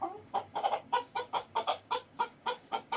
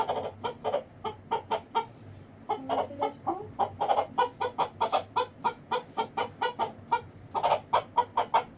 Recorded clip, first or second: second